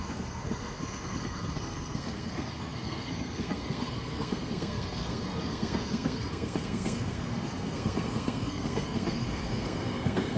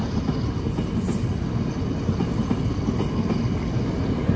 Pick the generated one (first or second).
first